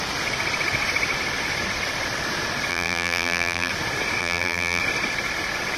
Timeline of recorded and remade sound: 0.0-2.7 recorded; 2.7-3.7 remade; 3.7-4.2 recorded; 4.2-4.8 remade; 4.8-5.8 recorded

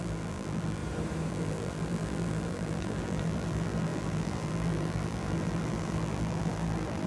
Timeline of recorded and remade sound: 0.0-0.8 remade; 0.8-1.3 recorded; 1.3-7.1 remade

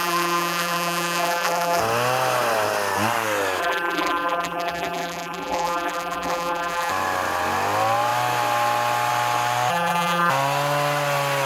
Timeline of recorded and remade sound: 0.0-1.8 remade; 1.8-3.6 recorded; 3.6-6.9 remade; 6.9-9.7 recorded; 9.7-10.3 remade; 10.3-11.5 recorded

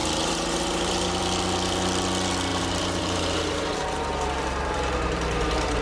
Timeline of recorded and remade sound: 0.0-1.2 remade; 1.2-2.5 recorded; 2.5-5.8 remade

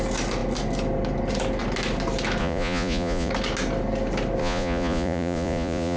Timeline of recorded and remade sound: 0.0-2.4 recorded; 2.4-3.3 remade; 3.3-4.4 recorded; 4.4-6.0 remade

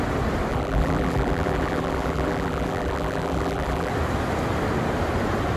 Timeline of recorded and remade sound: 0.0-0.5 recorded; 0.5-3.9 remade; 3.9-5.6 recorded

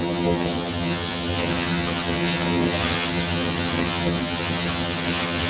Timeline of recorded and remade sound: 0.0-5.5 remade

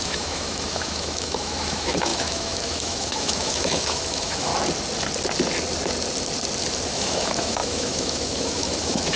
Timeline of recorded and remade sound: 0.0-4.5 remade; 4.5-6.9 recorded; 6.9-9.2 remade